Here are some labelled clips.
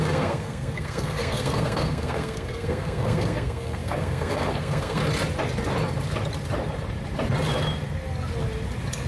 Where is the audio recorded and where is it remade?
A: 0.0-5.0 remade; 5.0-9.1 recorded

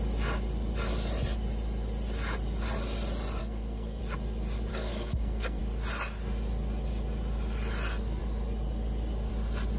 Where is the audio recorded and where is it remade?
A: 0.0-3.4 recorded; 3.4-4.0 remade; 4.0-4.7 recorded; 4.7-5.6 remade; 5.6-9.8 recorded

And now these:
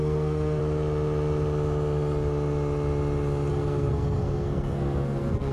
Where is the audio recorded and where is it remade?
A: 0.0-0.6 remade; 0.6-3.5 recorded; 3.5-5.5 remade

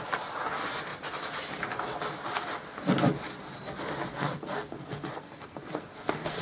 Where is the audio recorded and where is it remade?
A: 0.0-4.1 recorded; 4.1-6.4 remade

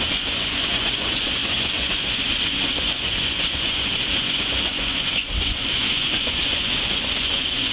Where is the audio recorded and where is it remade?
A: 0.0-7.7 remade

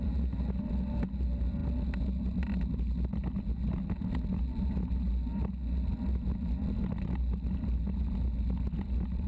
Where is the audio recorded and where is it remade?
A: 0.0-9.3 recorded